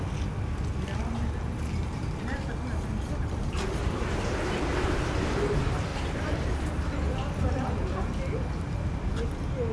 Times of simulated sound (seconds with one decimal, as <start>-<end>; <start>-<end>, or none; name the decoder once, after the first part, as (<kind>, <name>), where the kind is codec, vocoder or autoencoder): 1.8-2.5 (vocoder, BigVGAN v2); 5.9-6.7